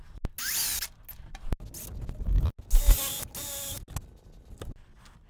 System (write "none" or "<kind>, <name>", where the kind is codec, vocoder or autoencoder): none